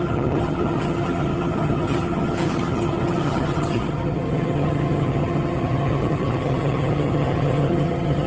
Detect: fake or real fake